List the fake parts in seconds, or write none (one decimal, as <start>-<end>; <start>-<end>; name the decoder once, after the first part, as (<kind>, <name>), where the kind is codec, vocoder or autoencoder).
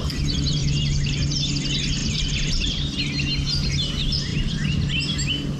0.6-1.5 (vocoder, BigVGAN v2); 2.0-3.0